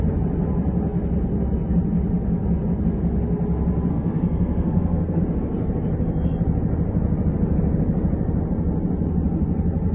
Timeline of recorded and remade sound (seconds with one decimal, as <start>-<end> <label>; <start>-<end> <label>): 0.0-3.9 recorded; 3.9-5.2 remade; 5.2-9.9 recorded